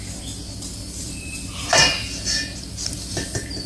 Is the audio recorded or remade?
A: remade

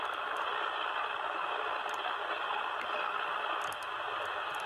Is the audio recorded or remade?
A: recorded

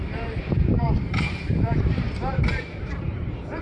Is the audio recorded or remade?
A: remade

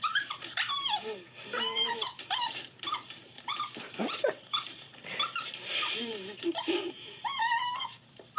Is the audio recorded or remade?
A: remade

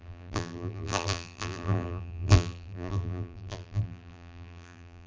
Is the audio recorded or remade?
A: remade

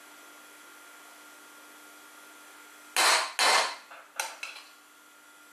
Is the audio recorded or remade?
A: recorded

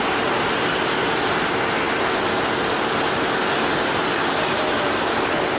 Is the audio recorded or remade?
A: recorded